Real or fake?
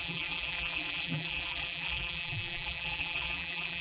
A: fake